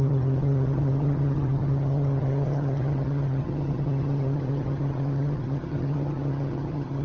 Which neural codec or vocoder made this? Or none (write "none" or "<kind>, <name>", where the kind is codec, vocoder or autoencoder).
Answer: vocoder, HiFi-GAN